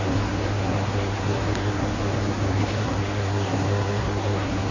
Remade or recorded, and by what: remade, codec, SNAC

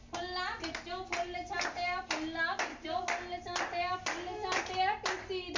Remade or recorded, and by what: recorded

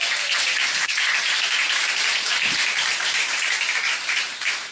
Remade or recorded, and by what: remade, vocoder, BigVGAN v2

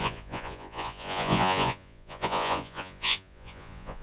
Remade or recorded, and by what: remade, vocoder, Vocos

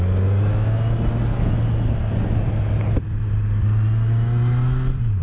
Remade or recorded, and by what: recorded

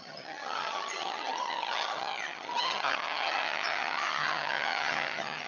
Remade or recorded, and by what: remade, vocoder, HiFi-GAN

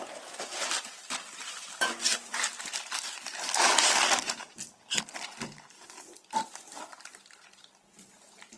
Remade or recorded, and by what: recorded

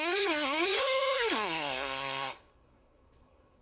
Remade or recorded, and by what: remade, codec, SNAC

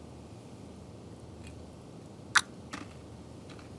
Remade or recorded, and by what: recorded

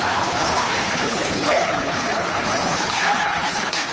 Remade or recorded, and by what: remade, codec, HILCodec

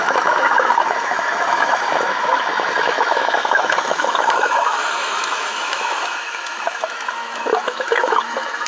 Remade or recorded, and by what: remade, autoencoder, DAC-VAE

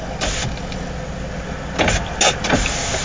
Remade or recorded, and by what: recorded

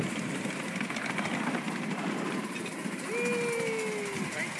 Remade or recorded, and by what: recorded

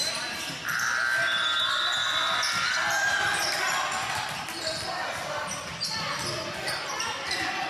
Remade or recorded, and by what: recorded